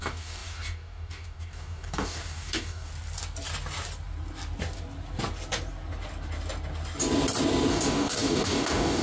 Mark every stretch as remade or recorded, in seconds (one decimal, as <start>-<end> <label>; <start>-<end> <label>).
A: 0.0-2.9 remade; 2.9-7.7 recorded; 7.7-9.0 remade